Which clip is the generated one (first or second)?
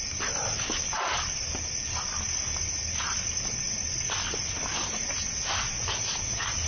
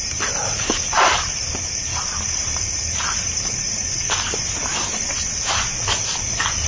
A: second